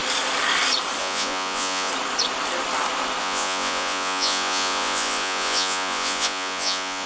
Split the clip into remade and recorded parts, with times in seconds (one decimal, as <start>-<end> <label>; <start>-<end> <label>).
0.0-1.0 recorded; 1.0-1.9 remade; 1.9-3.2 recorded; 3.2-7.1 remade